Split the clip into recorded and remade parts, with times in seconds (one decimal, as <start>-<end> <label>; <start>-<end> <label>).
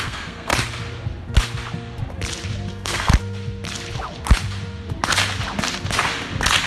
0.0-0.5 remade; 0.5-2.7 recorded; 2.7-3.1 remade; 3.1-6.7 recorded